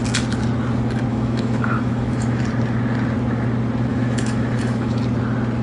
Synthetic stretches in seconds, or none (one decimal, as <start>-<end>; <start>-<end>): 1.1-2.4; 3.9-5.0